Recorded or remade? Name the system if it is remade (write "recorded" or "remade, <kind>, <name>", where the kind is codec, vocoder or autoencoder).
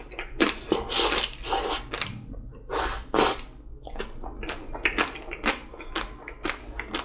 recorded